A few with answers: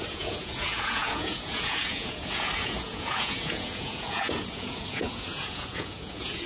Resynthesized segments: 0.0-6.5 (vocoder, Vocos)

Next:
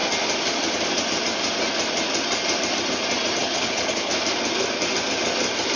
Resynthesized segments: 3.4-4.1 (codec, HILCodec)